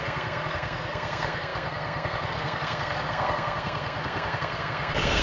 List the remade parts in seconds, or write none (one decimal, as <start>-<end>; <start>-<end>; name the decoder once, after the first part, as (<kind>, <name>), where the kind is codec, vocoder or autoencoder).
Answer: 0.0-5.2 (codec, SNAC)